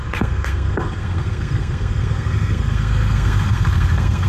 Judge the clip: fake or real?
fake